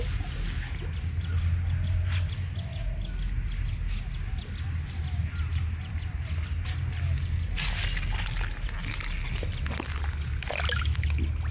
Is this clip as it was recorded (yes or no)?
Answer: yes